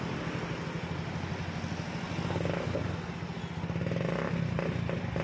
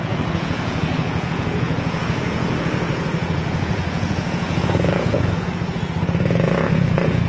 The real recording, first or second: first